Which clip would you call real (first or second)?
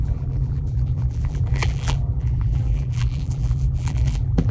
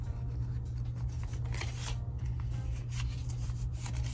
second